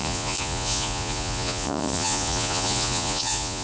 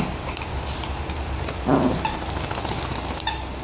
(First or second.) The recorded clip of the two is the second